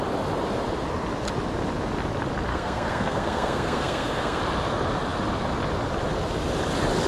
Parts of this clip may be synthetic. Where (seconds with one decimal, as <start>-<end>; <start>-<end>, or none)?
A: 2.5-4.4

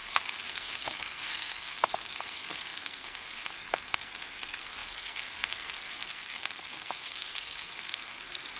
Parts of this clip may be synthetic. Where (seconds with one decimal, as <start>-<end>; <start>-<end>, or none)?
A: 0.0-8.6

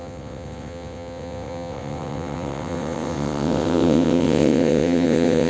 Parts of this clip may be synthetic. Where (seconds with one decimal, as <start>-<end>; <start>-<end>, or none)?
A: 0.0-5.5

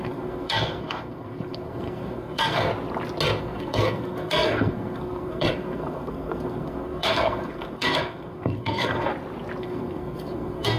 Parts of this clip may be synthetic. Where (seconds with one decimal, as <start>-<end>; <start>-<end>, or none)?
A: 0.0-2.7; 3.4-9.1; 9.6-10.8

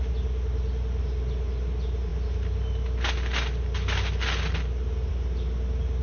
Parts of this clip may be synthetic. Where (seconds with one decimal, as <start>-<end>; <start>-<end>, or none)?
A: none

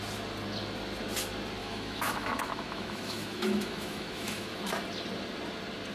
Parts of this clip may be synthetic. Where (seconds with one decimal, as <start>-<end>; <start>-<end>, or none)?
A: 1.6-4.6

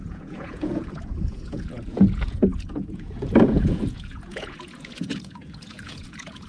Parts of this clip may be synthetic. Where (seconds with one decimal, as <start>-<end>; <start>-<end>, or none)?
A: 0.0-6.5

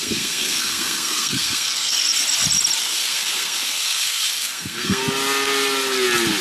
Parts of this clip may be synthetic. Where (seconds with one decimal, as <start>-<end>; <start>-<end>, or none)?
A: 0.0-2.0; 2.8-5.0